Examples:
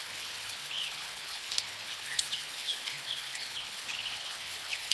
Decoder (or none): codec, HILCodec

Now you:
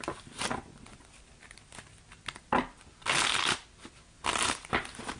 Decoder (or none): none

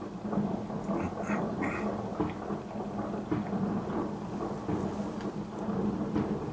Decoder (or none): none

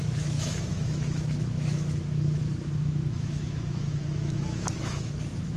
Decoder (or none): autoencoder, DAC-VAE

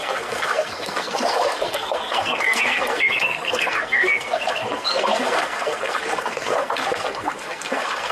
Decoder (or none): codec, SNAC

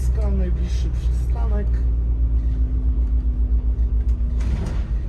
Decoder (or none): none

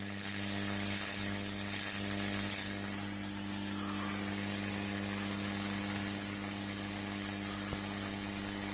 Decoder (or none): none